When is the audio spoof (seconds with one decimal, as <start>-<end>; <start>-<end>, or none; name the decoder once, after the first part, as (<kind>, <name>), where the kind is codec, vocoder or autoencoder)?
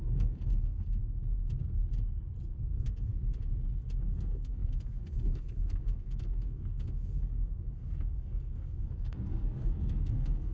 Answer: 0.0-1.0 (codec, SNAC); 2.7-3.1; 4.0-10.5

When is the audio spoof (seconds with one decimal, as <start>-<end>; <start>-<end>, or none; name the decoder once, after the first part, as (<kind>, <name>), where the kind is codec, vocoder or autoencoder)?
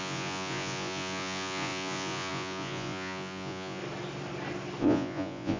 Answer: 0.0-3.8 (vocoder, Vocos); 4.8-5.6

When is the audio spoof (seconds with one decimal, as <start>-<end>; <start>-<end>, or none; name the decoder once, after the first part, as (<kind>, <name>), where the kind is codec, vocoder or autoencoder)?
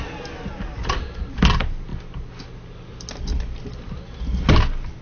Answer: none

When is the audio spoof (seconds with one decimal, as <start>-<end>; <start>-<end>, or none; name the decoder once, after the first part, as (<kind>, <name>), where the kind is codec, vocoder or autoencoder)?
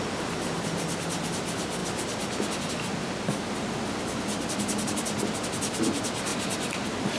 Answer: none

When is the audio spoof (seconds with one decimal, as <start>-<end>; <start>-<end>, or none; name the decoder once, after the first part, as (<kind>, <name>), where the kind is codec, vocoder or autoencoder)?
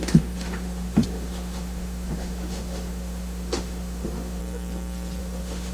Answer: 0.0-4.4 (autoencoder, DAC-VAE); 5.2-5.7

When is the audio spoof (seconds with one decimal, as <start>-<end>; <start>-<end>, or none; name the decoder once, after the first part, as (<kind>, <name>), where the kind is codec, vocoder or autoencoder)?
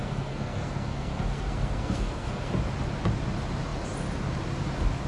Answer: 0.0-2.5 (codec, SNAC)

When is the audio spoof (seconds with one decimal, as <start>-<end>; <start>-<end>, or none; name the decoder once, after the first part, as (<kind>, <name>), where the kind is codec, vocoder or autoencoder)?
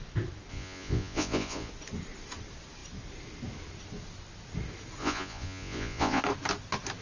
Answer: 0.5-1.7 (vocoder, Vocos); 5.0-6.2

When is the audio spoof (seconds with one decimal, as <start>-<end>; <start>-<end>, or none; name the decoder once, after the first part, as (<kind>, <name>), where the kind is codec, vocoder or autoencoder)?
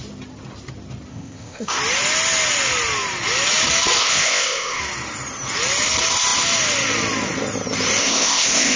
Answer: 1.1-1.8 (codec, ZipCodec); 4.0-4.8; 8.0-8.8